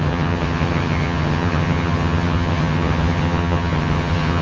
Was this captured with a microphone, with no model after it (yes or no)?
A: no